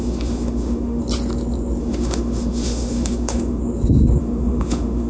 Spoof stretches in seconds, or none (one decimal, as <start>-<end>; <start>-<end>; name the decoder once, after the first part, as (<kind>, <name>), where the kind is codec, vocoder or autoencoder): 0.0-1.0 (autoencoder, DAC-VAE); 1.8-3.6; 4.2-5.1